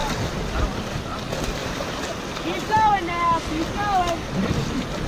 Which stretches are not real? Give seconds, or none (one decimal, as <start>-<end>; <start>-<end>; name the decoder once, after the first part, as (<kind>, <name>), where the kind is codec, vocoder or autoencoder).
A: none

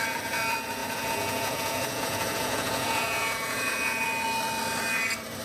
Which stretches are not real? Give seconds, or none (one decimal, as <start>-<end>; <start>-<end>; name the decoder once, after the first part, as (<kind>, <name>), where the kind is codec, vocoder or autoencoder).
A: 0.8-4.0 (vocoder, Vocos)

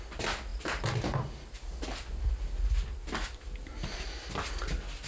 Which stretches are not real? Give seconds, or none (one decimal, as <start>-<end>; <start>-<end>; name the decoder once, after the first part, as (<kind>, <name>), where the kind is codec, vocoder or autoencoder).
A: none

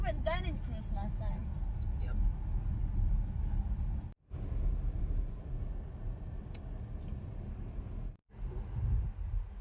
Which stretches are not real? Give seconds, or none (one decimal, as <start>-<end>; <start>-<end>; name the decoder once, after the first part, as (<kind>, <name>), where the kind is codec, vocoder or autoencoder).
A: none

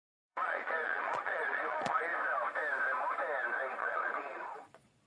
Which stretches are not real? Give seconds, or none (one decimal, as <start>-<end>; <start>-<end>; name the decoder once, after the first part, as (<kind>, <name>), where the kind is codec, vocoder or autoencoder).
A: 0.0-2.1 (vocoder, Vocos); 3.8-5.1

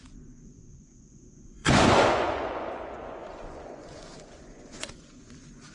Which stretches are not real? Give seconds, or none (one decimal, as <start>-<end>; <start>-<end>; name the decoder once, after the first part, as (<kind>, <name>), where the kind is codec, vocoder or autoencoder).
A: 0.0-5.7 (vocoder, Vocos)